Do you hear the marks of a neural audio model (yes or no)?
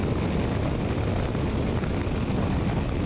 no